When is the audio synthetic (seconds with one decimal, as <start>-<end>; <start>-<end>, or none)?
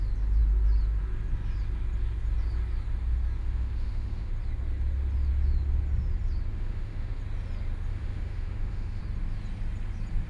3.4-4.3; 6.5-7.2; 7.9-9.0